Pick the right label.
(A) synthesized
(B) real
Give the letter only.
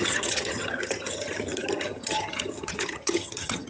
A